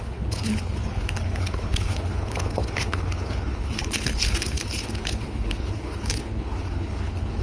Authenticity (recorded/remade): remade